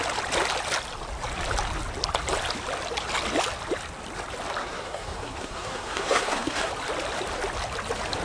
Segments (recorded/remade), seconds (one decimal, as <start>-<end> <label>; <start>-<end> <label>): 0.0-4.6 recorded; 4.6-6.7 remade; 6.7-8.2 recorded